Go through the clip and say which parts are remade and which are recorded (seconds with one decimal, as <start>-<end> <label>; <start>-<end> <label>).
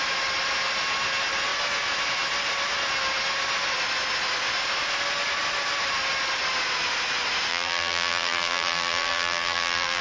0.0-7.5 recorded; 7.5-10.0 remade